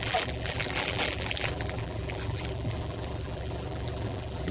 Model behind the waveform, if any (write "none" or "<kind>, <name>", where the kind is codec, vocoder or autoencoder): vocoder, BigVGAN v2